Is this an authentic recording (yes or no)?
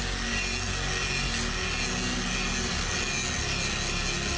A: yes